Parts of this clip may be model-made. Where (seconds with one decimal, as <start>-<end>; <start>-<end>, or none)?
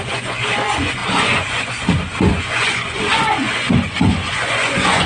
0.0-5.1